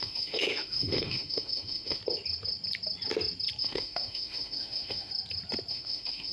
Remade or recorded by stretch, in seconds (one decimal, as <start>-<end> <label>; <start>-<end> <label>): 0.0-2.0 remade; 2.0-3.6 recorded; 3.6-5.1 remade; 5.1-5.7 recorded; 5.7-6.3 remade